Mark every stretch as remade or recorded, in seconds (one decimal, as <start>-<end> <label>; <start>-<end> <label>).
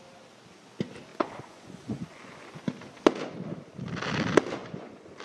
0.0-1.1 recorded; 1.1-2.5 remade; 2.5-4.6 recorded; 4.6-5.2 remade